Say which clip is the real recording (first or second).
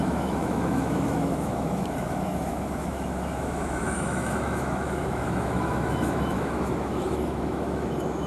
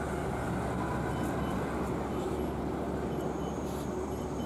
second